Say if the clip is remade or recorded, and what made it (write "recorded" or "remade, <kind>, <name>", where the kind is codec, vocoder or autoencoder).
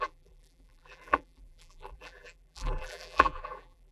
remade, vocoder, BigVGAN v2